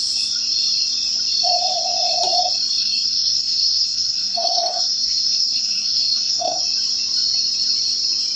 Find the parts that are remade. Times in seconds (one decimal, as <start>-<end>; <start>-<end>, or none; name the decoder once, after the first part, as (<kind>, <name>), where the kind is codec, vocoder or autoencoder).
2.8-6.6 (codec, SNAC)